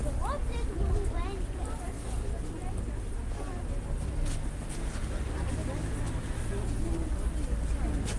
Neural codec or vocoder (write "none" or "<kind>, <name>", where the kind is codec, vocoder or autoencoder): none